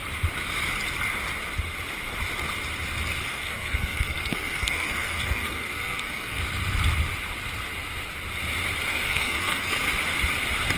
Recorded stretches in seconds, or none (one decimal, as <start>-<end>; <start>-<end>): 0.0-3.3; 6.4-8.9; 9.7-10.8